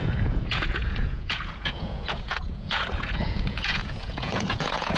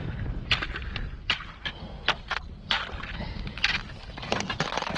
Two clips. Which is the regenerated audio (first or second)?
first